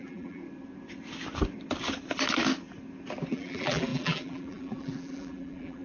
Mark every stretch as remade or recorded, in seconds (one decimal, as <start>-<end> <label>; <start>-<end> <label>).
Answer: 0.0-0.4 remade; 0.4-3.3 recorded; 3.3-5.8 remade